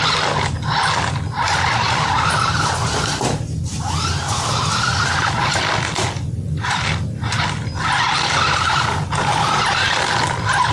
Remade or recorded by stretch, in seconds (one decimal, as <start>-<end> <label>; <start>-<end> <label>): 0.0-10.7 recorded